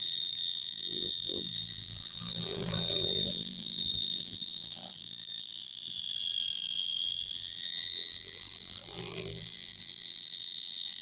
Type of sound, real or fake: fake